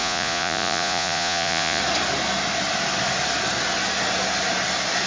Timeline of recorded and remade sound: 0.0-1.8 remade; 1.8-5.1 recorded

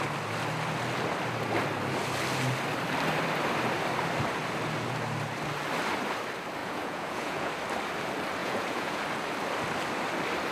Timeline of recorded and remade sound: 0.0-6.6 recorded; 6.6-7.5 remade; 7.5-8.4 recorded; 8.4-9.0 remade; 9.0-10.5 recorded

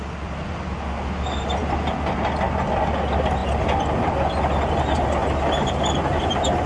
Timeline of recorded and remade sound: 0.0-6.7 recorded

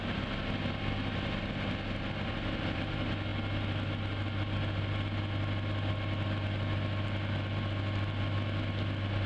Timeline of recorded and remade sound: 0.0-9.3 recorded